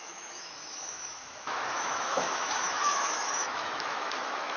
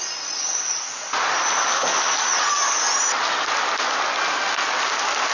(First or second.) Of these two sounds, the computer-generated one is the first